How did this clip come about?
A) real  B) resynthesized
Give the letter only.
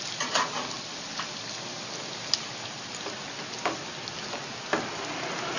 A